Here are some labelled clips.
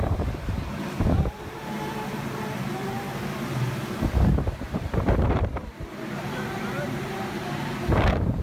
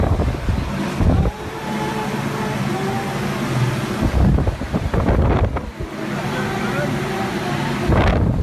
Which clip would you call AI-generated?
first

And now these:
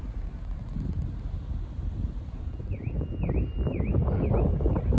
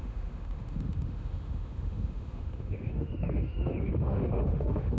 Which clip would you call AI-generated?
second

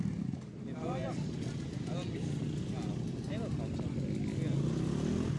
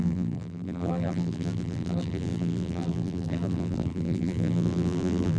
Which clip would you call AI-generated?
second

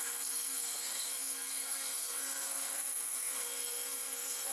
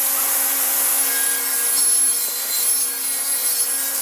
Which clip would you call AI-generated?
first